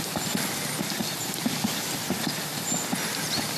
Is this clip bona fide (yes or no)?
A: yes